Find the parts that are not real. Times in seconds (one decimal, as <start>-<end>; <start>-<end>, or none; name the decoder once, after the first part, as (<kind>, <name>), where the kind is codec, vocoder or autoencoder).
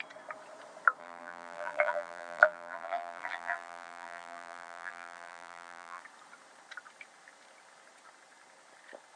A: 1.0-6.0 (vocoder, BigVGAN v2)